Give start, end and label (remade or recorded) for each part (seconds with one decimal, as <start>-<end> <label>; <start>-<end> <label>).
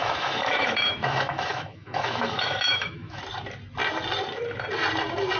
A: 0.0-3.2 remade; 3.2-5.4 recorded